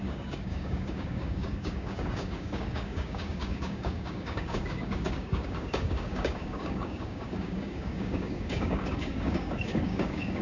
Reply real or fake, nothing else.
fake